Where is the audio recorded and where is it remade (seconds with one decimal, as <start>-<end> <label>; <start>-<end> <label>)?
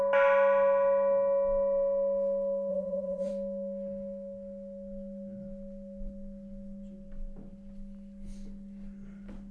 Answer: 0.0-2.7 recorded; 2.7-3.3 remade; 3.3-9.5 recorded